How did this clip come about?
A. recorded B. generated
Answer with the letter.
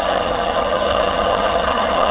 B